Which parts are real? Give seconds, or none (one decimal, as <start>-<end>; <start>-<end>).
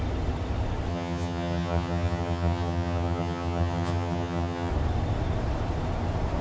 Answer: 0.0-0.9; 4.7-6.4